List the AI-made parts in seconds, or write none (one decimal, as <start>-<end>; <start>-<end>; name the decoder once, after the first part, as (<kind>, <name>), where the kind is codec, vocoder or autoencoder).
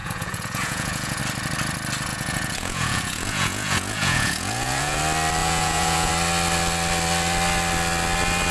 0.0-1.2 (vocoder, Vocos); 2.1-5.0; 5.4-6.1